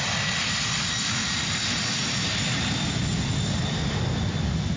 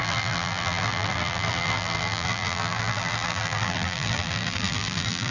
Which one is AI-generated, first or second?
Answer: second